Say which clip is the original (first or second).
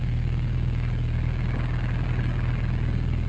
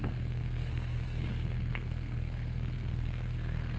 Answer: first